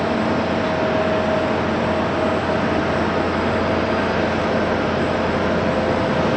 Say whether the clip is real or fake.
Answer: real